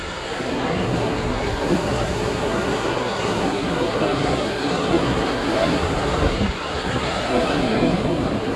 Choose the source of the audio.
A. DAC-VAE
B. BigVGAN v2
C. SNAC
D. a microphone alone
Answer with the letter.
C